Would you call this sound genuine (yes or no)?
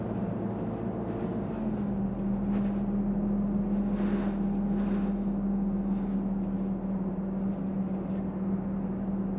yes